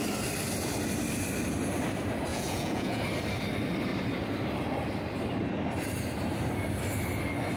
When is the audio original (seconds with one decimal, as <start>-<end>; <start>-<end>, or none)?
0.0-2.3; 3.0-7.6